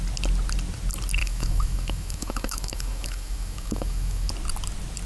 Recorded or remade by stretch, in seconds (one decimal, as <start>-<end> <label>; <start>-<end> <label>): 0.0-1.2 recorded; 1.2-4.3 remade; 4.3-5.1 recorded